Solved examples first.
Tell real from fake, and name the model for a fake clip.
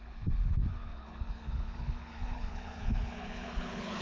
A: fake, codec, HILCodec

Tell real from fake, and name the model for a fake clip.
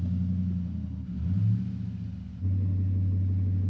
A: real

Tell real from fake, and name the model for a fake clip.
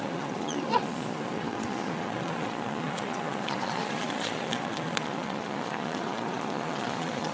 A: fake, vocoder, Vocos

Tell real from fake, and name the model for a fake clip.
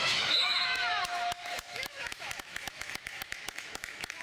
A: fake, autoencoder, DAC-VAE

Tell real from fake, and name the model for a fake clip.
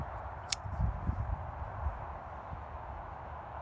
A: real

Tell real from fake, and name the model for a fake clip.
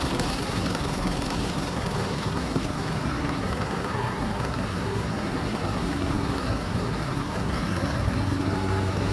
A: fake, codec, SNAC